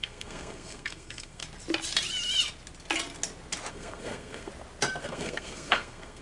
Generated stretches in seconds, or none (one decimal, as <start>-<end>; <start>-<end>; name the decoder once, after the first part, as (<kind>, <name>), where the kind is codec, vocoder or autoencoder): 0.0-1.4 (codec, SNAC); 3.7-4.5; 5.0-6.2